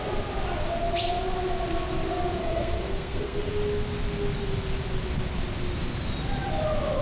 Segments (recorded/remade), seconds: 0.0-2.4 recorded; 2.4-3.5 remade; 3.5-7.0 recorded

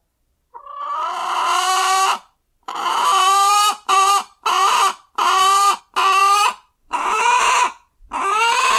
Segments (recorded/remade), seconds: 0.0-1.2 recorded; 1.2-5.8 remade; 5.8-6.2 recorded; 6.2-7.6 remade; 7.6-8.8 recorded

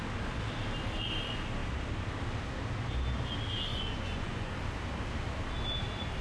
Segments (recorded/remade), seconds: 0.0-3.7 recorded; 3.7-4.5 remade; 4.5-6.2 recorded

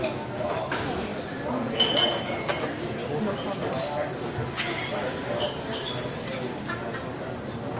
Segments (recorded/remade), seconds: 0.0-0.6 recorded; 0.6-1.1 remade; 1.1-2.6 recorded; 2.6-3.0 remade; 3.0-7.8 recorded

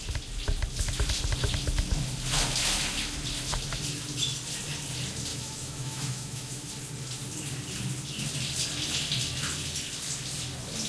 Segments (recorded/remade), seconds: 0.0-5.3 recorded; 5.3-6.7 remade; 6.7-10.9 recorded

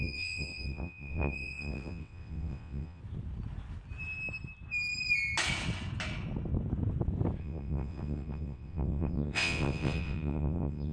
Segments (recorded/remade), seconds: 0.0-3.0 remade; 3.0-7.4 recorded; 7.4-10.9 remade

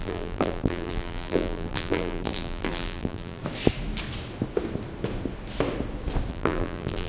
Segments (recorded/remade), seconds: 0.0-3.4 remade; 3.4-6.3 recorded; 6.3-7.1 remade